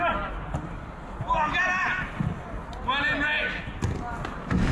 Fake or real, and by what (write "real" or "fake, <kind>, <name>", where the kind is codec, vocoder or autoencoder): real